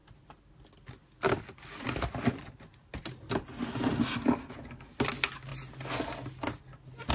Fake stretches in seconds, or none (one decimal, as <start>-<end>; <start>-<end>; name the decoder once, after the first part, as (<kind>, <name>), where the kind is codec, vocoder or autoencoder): none

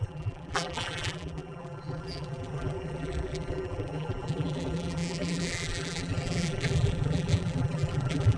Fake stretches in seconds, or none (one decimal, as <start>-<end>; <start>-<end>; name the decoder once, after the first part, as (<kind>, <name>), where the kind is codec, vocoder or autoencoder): 0.0-8.4 (vocoder, BigVGAN v2)

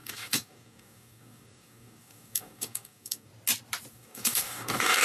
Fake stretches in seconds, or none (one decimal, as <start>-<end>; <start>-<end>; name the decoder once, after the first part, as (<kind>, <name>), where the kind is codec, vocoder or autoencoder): 0.0-3.3 (codec, DAC); 3.9-5.0

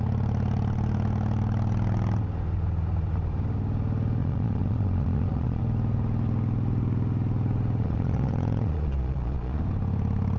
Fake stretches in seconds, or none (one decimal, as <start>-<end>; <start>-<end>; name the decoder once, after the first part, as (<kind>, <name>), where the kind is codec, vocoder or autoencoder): 4.2-5.6 (vocoder, Vocos); 7.8-9.6

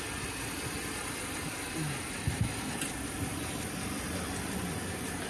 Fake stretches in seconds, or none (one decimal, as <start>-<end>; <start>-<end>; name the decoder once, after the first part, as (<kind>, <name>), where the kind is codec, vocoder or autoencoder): none

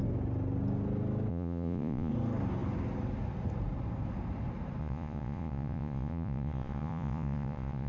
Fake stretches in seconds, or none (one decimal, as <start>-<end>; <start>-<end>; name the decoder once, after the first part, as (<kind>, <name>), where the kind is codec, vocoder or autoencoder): 1.3-2.1 (vocoder, Vocos); 4.8-7.9